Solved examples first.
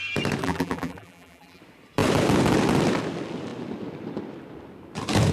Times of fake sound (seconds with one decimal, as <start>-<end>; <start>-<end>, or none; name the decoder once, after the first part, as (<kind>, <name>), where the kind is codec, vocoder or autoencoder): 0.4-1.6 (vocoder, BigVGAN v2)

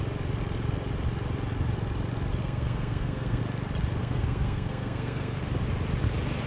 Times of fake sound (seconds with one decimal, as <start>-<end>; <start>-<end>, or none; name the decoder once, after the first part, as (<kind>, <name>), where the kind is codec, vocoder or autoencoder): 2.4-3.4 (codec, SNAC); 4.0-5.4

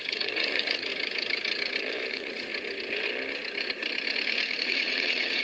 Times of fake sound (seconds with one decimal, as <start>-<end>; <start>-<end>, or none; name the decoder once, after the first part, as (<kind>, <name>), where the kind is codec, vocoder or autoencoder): 0.0-0.9 (vocoder, Vocos); 2.1-2.5; 4.6-5.4

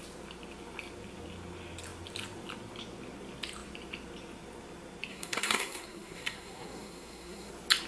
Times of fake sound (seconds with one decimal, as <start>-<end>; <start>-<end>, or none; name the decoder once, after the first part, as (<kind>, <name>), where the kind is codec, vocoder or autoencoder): 5.1-7.5 (codec, SNAC)

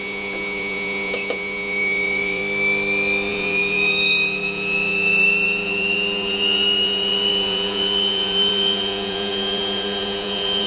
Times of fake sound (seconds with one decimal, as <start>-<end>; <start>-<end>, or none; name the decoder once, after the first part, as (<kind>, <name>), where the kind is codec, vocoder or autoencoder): 0.0-2.4 (vocoder, Vocos); 3.3-10.7

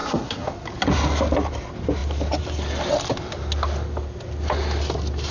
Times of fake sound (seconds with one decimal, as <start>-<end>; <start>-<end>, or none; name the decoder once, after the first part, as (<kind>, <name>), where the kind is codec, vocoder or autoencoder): 0.0-0.5 (codec, SNAC)

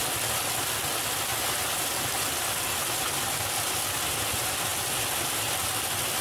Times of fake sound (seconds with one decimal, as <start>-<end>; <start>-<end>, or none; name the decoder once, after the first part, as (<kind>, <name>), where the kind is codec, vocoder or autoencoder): none

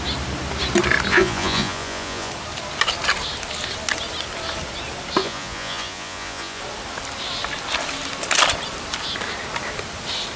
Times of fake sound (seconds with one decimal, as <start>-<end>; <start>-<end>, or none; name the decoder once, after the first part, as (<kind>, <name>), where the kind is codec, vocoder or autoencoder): 1.1-2.3 (vocoder, Vocos); 5.2-6.6